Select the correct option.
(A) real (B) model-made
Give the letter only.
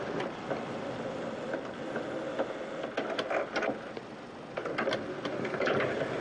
A